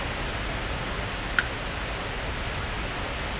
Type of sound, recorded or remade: recorded